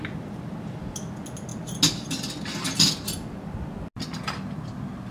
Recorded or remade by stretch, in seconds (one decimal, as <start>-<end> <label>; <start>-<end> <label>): 0.0-5.1 recorded

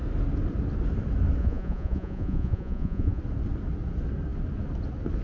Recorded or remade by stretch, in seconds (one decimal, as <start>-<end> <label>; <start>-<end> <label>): 0.0-1.4 recorded; 1.4-3.2 remade; 3.2-5.2 recorded

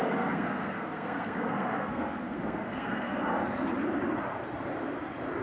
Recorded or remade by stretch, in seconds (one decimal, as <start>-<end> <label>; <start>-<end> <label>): 0.0-3.2 remade; 3.2-5.4 recorded

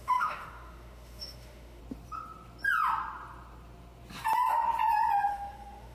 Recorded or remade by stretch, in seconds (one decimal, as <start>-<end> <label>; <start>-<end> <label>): 0.0-1.8 remade; 1.8-5.3 recorded; 5.3-5.9 remade

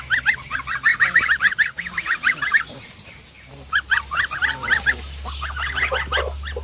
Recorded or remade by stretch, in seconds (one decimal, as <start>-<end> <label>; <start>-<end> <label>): 0.0-0.9 recorded; 0.9-4.9 remade; 4.9-6.6 recorded

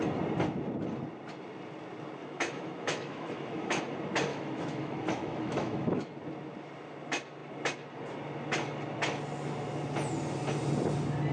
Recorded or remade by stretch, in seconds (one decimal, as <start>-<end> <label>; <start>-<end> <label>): 0.0-2.2 recorded; 2.2-3.8 remade; 3.8-4.3 recorded; 4.3-6.1 remade; 6.1-11.3 recorded